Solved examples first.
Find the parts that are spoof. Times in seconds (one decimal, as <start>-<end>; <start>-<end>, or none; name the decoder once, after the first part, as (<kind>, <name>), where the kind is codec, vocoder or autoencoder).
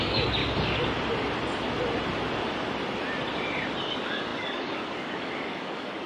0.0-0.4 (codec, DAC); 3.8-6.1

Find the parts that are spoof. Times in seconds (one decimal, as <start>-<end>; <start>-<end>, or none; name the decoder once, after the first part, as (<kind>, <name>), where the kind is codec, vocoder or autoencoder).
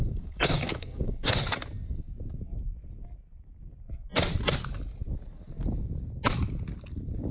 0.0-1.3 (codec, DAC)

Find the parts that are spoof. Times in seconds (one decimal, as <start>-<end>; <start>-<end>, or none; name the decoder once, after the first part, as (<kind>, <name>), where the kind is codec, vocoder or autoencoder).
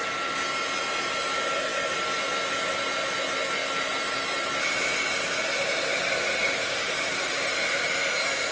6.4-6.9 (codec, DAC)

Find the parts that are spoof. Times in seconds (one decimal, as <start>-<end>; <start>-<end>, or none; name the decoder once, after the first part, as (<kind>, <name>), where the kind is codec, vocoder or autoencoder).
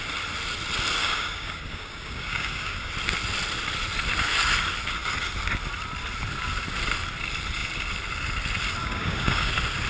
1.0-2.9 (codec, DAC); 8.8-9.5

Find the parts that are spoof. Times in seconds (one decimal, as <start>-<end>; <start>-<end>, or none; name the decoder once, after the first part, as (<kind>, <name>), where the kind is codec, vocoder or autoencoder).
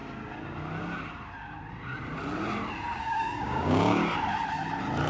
3.0-4.0 (codec, DAC)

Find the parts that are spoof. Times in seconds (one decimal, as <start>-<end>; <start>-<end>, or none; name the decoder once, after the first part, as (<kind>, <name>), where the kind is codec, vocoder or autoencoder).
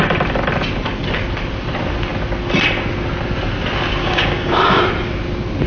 4.0-4.8 (codec, DAC)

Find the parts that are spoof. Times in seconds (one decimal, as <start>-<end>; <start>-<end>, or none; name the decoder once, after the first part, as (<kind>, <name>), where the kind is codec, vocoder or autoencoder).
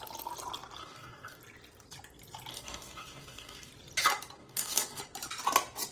0.8-1.4 (codec, DAC); 2.5-3.7; 4.4-5.0